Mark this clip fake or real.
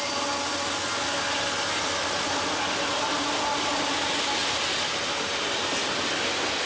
real